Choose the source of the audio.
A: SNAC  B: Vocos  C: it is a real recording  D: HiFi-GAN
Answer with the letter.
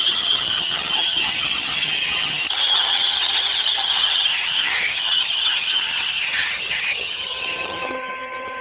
D